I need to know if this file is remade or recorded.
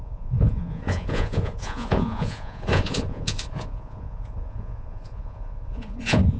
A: remade